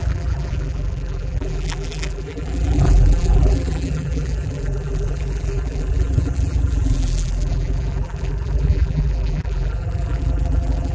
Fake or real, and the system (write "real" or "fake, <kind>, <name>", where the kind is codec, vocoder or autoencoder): fake, vocoder, BigVGAN v2